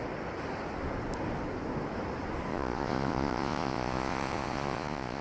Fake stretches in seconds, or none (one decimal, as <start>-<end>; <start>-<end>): 2.5-5.2